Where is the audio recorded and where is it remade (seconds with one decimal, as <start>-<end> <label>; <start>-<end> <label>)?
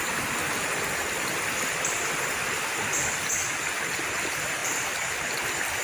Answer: 0.0-4.6 recorded; 4.6-5.3 remade; 5.3-5.8 recorded